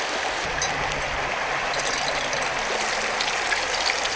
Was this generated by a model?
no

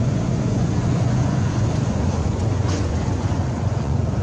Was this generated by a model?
yes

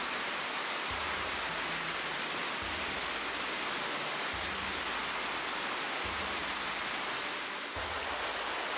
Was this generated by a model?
no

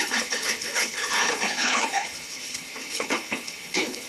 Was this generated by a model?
yes